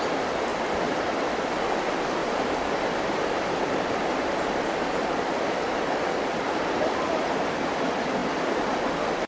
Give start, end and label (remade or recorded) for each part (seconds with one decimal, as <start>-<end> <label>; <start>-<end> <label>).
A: 0.0-0.5 recorded; 0.5-1.5 remade; 1.5-2.2 recorded; 2.2-7.0 remade; 7.0-9.3 recorded